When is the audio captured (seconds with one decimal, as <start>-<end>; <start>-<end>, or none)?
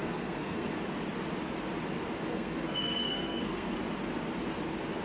0.8-2.3; 3.8-5.0